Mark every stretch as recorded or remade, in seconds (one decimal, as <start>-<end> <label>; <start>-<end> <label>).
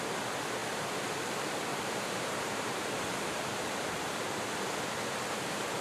0.0-1.7 recorded; 1.7-4.4 remade; 4.4-5.8 recorded